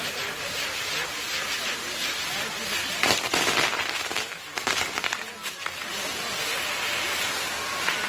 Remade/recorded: recorded